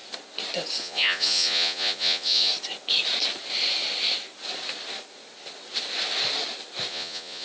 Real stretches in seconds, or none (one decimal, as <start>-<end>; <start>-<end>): 0.0-0.8; 2.5-6.9